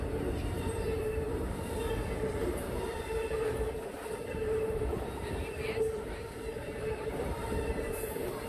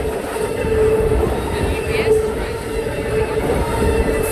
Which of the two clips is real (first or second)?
second